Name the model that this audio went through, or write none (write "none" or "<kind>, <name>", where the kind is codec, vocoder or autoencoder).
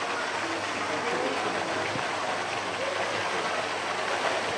none